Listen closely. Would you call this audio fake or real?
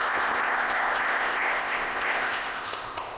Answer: fake